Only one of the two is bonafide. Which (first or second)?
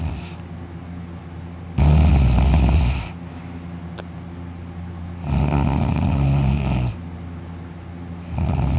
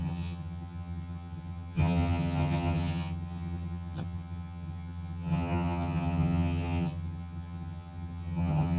first